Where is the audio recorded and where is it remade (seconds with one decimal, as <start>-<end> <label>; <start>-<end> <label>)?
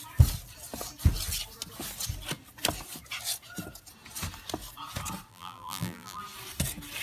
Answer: 0.0-5.3 recorded; 5.3-6.2 remade; 6.2-7.0 recorded